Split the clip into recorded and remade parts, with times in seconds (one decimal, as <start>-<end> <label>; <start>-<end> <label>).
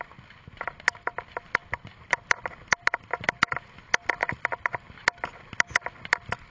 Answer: 0.0-1.6 recorded; 1.6-3.2 remade; 3.2-6.5 recorded